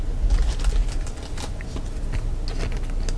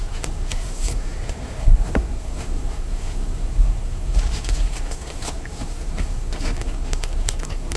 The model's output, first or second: second